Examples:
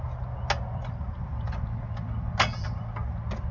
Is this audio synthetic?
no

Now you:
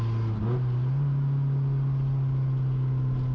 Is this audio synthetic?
no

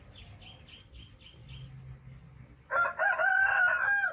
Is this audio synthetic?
no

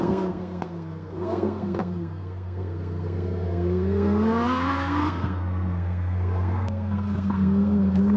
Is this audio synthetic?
yes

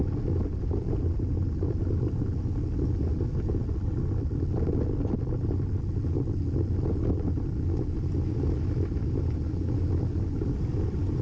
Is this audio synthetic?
no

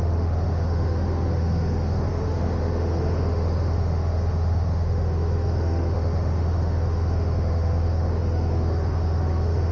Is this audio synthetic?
yes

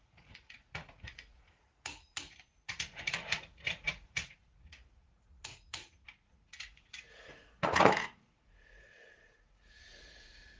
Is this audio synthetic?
yes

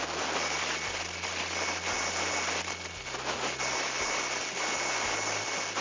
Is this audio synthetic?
no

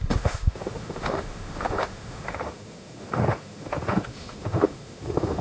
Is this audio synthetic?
yes